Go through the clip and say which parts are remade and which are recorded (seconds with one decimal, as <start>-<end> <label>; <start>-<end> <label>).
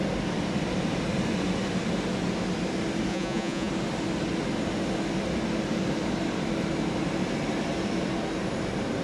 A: 0.0-3.1 recorded; 3.1-3.7 remade; 3.7-9.0 recorded